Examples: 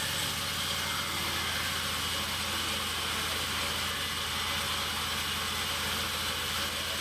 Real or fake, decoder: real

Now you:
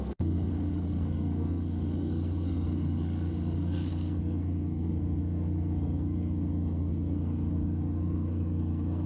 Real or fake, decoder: fake, codec, SNAC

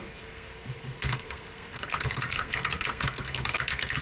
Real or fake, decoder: fake, codec, SNAC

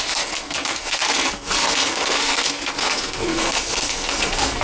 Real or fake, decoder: fake, codec, SNAC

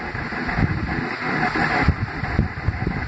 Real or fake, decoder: real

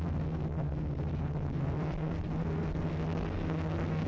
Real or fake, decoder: fake, codec, SNAC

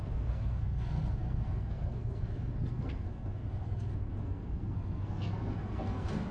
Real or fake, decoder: fake, codec, SNAC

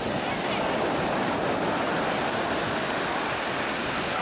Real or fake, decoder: real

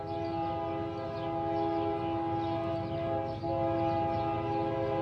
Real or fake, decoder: real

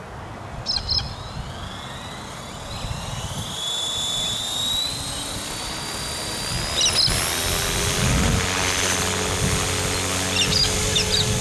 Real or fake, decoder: real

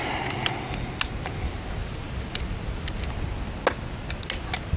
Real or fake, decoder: real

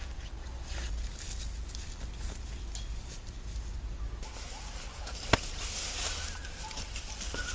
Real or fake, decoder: real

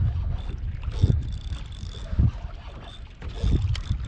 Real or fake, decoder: real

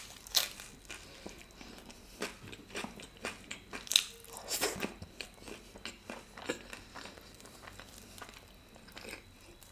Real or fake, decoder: real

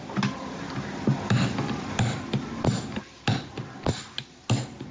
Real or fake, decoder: real